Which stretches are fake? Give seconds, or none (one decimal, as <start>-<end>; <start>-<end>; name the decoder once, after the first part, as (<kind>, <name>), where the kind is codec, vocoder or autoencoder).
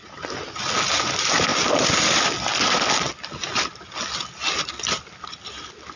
none